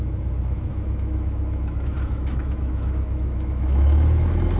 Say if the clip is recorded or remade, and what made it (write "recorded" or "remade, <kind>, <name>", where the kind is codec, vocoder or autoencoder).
remade, autoencoder, DAC-VAE